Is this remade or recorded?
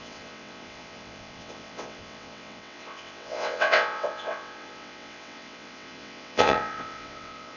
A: remade